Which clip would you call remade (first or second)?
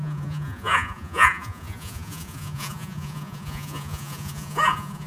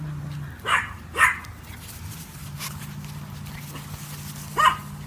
first